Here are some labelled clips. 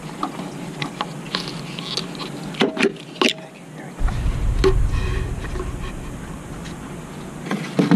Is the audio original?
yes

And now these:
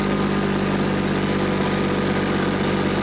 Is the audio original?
yes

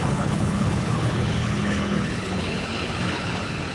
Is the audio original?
no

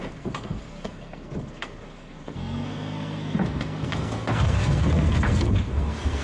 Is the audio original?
no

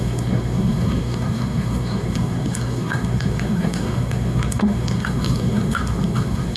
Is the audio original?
no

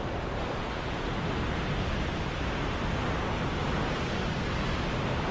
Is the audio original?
yes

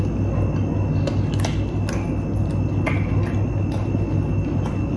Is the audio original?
yes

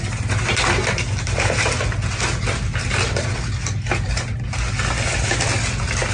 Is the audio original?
yes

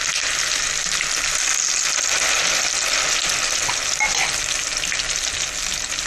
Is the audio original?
yes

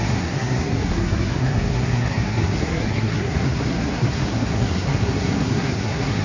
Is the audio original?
no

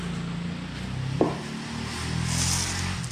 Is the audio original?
yes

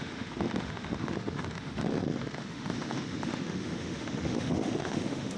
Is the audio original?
no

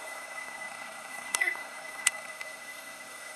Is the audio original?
no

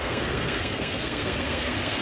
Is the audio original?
no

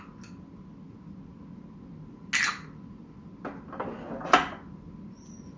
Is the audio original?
yes